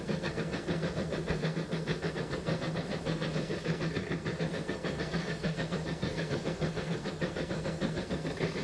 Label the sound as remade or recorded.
remade